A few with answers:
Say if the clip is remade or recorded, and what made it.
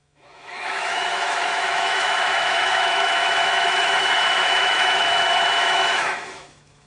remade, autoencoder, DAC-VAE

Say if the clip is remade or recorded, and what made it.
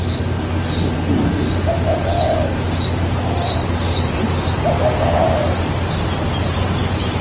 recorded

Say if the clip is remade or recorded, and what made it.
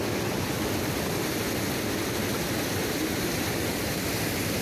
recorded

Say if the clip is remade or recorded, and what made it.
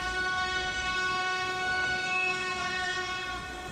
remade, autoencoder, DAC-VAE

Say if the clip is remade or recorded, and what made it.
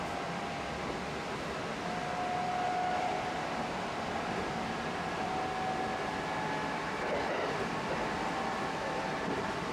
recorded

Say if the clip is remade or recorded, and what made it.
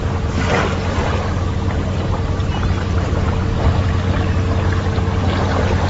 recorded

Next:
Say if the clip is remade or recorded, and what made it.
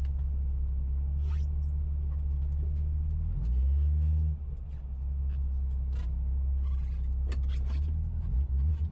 recorded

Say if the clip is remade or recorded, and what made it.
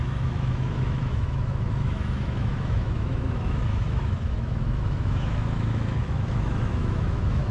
remade, autoencoder, DAC-VAE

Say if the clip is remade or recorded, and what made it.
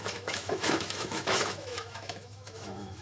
remade, autoencoder, DAC-VAE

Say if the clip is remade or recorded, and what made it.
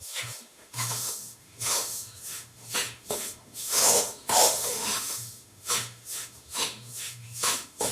remade, autoencoder, DAC-VAE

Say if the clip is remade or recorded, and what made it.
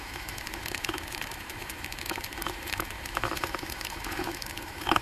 remade, autoencoder, DAC-VAE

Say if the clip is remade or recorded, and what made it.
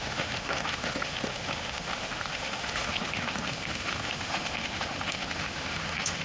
remade, autoencoder, DAC-VAE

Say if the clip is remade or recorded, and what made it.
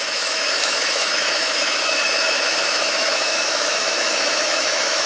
remade, autoencoder, DAC-VAE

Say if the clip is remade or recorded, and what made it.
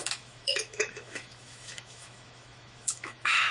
remade, autoencoder, DAC-VAE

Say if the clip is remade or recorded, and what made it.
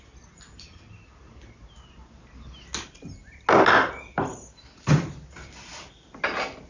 recorded